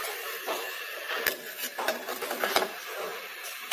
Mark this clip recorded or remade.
recorded